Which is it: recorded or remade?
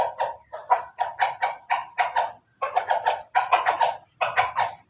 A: recorded